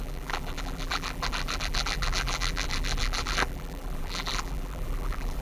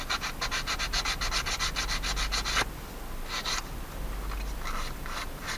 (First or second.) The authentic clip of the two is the second